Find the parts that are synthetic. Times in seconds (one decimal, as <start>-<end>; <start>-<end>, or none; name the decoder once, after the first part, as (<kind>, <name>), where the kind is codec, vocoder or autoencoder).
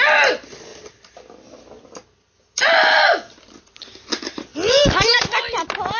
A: none